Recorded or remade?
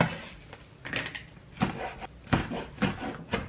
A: recorded